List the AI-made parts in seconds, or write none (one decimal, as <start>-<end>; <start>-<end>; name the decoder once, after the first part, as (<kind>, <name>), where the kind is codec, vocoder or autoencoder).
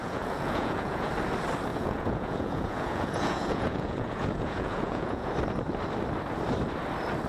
0.0-1.1 (vocoder, Vocos); 1.7-5.3